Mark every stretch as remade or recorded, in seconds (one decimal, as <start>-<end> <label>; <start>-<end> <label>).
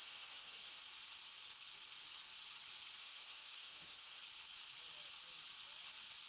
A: 0.0-0.8 remade; 0.8-3.0 recorded; 3.0-4.2 remade; 4.2-6.3 recorded